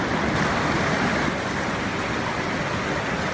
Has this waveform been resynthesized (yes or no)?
no